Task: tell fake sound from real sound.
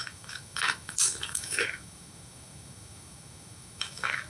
fake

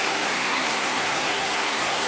fake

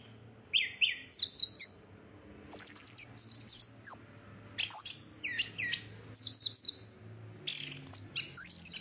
real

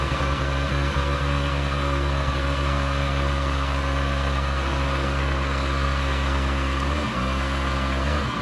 fake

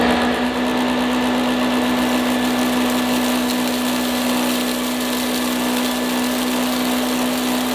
real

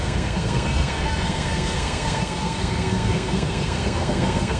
fake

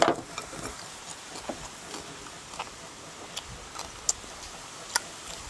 real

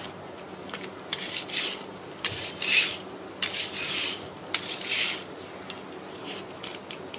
real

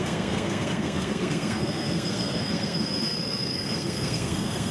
fake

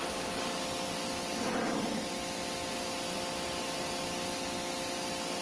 real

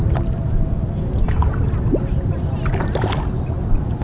real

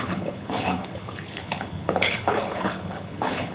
fake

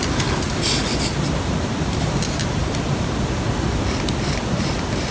real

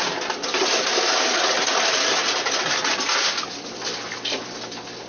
real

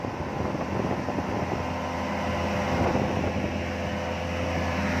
real